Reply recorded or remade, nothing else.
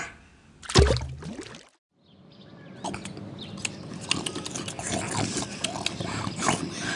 recorded